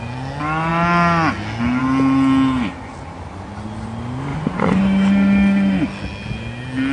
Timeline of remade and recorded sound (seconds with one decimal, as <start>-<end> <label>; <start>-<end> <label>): 0.0-4.3 recorded; 4.3-4.8 remade; 4.8-6.9 recorded